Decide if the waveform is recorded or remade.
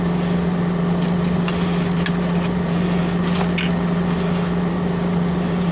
recorded